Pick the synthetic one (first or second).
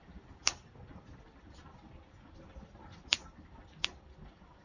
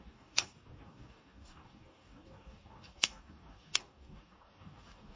second